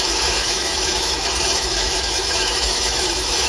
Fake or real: fake